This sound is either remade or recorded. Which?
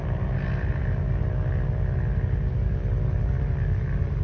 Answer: recorded